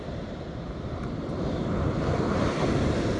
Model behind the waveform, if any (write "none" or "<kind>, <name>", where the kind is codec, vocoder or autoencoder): vocoder, BigVGAN v2